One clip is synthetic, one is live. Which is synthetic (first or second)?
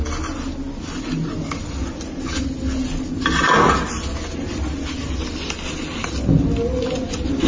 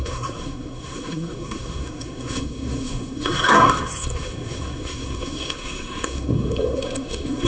second